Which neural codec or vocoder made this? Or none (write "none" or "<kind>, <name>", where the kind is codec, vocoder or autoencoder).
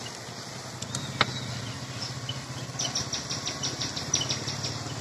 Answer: none